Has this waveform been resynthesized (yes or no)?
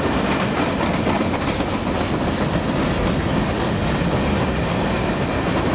no